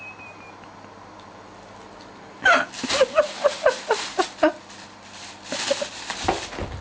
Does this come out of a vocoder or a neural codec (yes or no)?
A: no